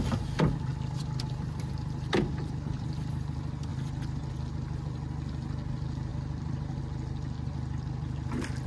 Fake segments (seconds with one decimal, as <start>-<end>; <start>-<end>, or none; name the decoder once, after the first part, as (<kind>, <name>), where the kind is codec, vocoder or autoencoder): 0.7-3.1 (vocoder, BigVGAN v2); 3.7-4.2; 6.1-6.8